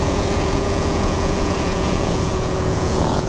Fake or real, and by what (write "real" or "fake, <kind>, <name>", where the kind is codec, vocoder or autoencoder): fake, vocoder, Vocos